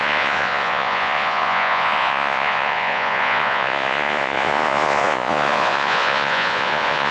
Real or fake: fake